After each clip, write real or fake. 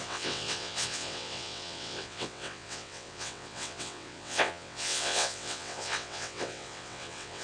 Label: fake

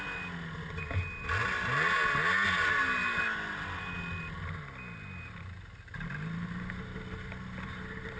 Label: real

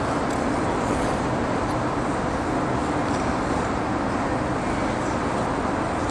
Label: real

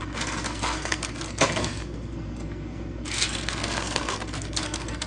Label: fake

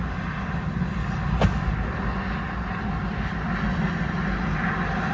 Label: real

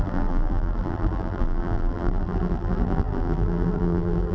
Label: fake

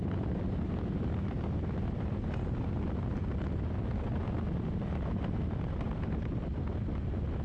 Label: real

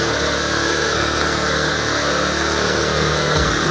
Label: fake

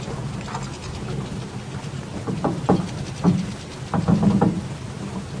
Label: real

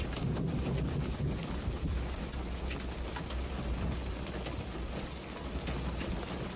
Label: real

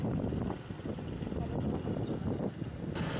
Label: real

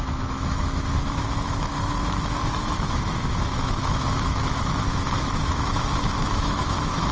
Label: fake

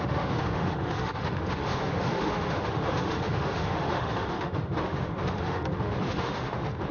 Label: fake